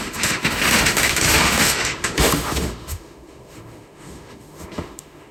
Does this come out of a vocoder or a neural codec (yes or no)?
yes